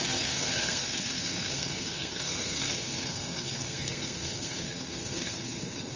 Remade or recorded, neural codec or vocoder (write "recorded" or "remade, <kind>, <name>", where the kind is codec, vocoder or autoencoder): remade, codec, SNAC